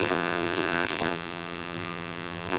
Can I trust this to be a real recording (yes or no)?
no